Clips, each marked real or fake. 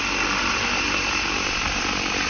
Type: real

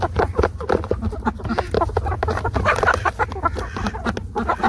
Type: real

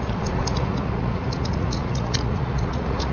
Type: fake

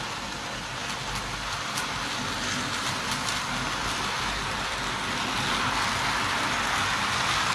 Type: real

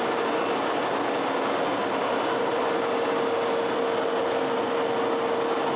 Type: real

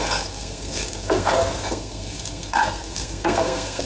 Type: fake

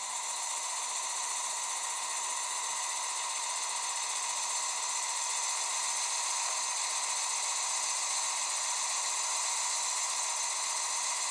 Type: real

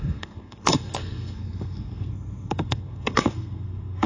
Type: fake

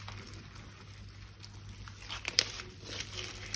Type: real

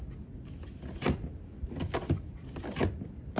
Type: real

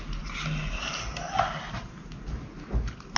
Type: real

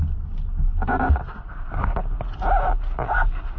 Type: real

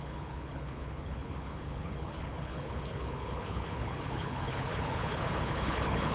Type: fake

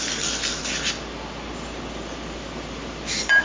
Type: real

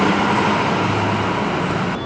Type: real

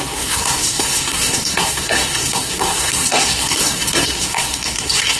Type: fake